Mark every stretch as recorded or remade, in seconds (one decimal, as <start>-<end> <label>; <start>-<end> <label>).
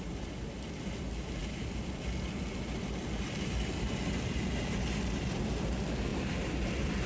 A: 0.0-7.1 recorded